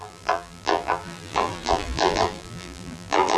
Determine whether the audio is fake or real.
fake